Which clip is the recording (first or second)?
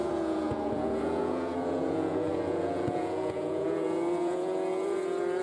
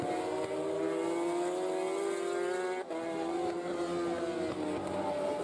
second